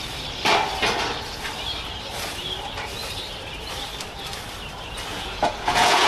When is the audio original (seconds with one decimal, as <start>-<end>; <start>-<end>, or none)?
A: 0.0-5.1